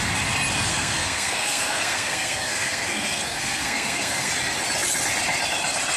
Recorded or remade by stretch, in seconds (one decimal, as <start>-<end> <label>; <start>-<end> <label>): 0.0-0.7 recorded; 0.7-4.3 remade; 4.3-6.0 recorded